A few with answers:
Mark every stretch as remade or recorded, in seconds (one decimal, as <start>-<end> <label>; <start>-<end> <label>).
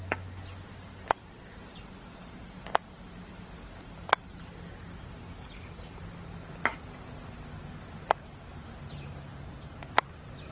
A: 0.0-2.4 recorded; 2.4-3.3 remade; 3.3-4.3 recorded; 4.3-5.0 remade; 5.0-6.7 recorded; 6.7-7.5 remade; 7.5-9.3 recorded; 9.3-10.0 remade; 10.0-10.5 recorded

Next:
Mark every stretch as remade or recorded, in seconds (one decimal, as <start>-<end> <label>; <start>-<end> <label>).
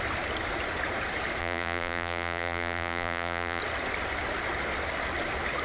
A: 0.0-1.4 recorded; 1.4-3.6 remade; 3.6-5.6 recorded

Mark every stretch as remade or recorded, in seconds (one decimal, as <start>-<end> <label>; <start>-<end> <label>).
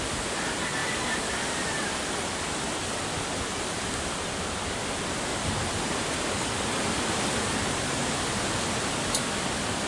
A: 0.0-0.8 recorded; 0.8-1.7 remade; 1.7-5.3 recorded; 5.3-5.9 remade; 5.9-9.9 recorded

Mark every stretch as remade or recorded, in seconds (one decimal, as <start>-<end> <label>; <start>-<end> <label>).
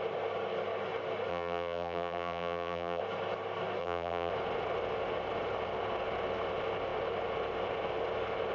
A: 0.0-1.3 recorded; 1.3-3.0 remade; 3.0-3.8 recorded; 3.8-4.3 remade; 4.3-8.5 recorded